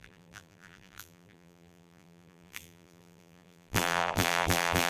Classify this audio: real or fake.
fake